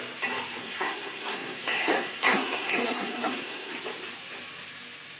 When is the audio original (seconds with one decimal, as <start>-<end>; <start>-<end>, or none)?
0.0-0.6; 3.7-5.2